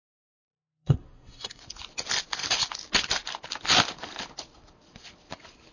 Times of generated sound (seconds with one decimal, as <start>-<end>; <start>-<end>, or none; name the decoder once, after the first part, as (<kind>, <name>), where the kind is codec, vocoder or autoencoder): 0.0-1.6 (codec, SNAC)